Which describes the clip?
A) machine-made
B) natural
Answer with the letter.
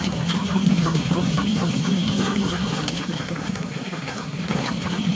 A